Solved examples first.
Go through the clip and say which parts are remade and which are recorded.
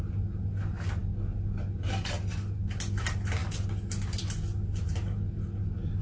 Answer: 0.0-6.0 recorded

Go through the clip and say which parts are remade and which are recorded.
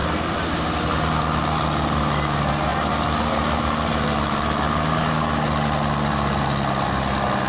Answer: 0.0-7.5 recorded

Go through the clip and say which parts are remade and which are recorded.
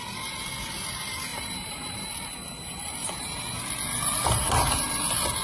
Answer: 0.0-1.3 recorded; 1.3-2.0 remade; 2.0-5.4 recorded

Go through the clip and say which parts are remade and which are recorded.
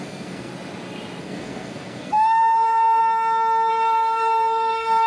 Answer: 0.0-0.5 remade; 0.5-1.2 recorded; 1.2-3.0 remade; 3.0-3.7 recorded; 3.7-5.1 remade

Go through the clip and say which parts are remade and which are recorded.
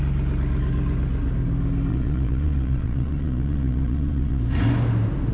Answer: 0.0-1.9 recorded; 1.9-4.4 remade; 4.4-5.3 recorded